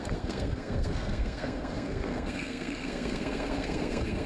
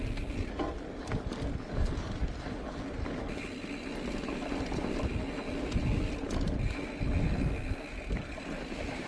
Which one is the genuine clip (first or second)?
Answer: second